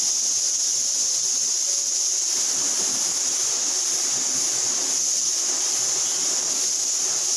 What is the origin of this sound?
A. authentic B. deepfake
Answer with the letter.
A